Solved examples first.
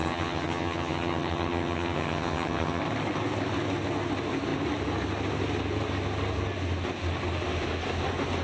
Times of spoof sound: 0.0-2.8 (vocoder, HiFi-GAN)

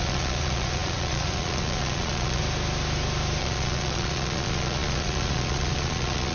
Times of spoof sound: 0.0-2.4 (vocoder, Vocos); 3.4-6.3